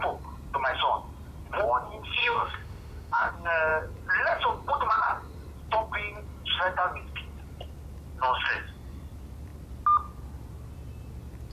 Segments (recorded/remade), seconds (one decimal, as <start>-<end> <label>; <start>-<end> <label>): 0.0-2.2 recorded; 2.2-3.3 remade; 3.3-11.5 recorded